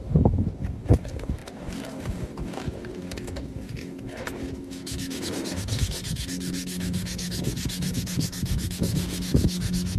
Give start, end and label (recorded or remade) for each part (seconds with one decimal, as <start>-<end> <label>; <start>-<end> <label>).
0.0-10.0 remade

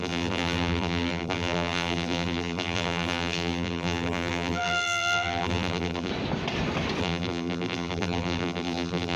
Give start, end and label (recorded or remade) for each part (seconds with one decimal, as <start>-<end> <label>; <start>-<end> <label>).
0.0-6.1 remade; 6.1-7.0 recorded; 7.0-9.2 remade

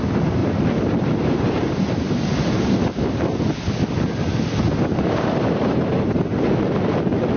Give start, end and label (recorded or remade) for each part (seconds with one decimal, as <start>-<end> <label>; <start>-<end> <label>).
0.0-0.4 recorded; 0.4-2.6 remade; 2.6-4.3 recorded; 4.3-6.2 remade; 6.2-7.4 recorded

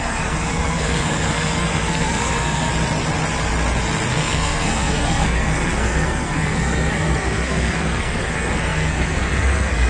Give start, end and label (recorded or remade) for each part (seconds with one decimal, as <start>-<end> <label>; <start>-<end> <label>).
0.0-2.7 remade; 2.7-4.1 recorded; 4.1-9.9 remade

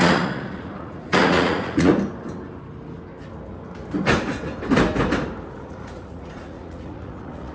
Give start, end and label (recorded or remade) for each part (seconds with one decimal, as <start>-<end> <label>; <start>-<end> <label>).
0.0-1.9 remade; 1.9-5.5 recorded; 5.5-7.5 remade

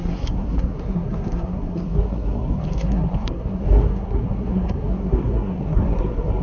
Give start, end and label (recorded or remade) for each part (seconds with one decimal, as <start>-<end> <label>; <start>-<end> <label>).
0.0-6.4 remade

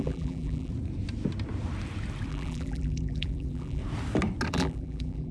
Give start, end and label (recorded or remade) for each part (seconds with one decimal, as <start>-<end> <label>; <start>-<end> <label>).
0.0-0.7 remade; 0.7-2.3 recorded; 2.3-3.8 remade; 3.8-4.5 recorded; 4.5-5.3 remade